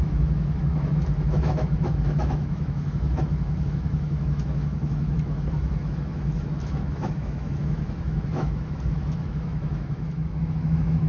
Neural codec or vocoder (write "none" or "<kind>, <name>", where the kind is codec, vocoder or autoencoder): autoencoder, DAC-VAE